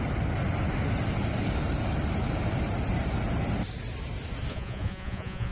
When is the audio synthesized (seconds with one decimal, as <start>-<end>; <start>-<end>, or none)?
4.5-5.5

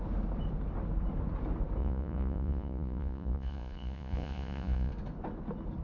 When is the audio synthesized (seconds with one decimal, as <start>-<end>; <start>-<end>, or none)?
1.8-4.9

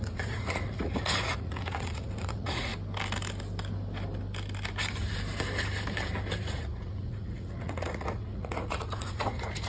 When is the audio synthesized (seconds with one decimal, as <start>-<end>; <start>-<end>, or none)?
0.0-2.7; 6.4-9.7